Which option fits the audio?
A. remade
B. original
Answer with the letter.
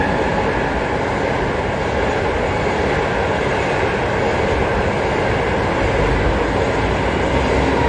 B